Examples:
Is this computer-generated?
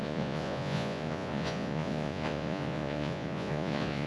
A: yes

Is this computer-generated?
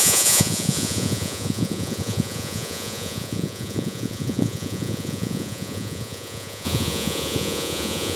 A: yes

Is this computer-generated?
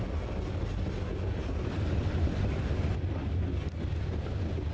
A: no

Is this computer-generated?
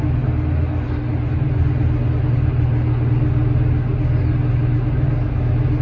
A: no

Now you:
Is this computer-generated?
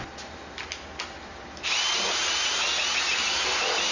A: no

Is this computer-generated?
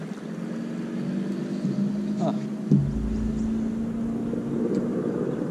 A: no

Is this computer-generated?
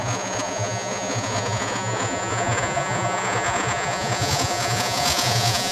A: yes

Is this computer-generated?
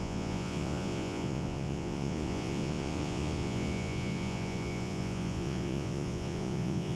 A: yes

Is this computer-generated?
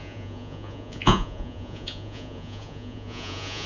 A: yes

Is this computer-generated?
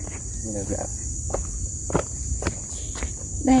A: no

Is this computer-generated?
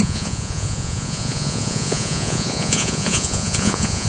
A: yes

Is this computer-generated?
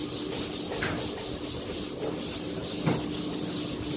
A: no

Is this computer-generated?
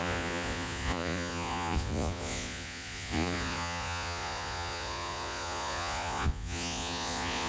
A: yes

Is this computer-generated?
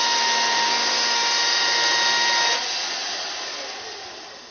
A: no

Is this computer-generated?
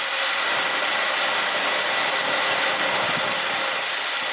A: no